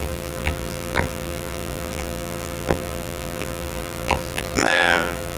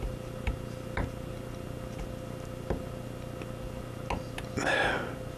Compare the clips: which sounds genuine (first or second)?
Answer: second